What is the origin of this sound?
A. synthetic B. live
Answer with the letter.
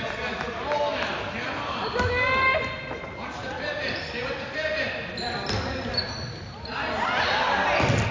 B